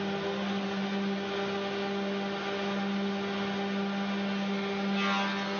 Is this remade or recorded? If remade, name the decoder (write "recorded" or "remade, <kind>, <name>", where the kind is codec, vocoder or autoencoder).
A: recorded